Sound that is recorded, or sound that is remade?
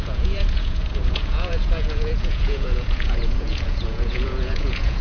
remade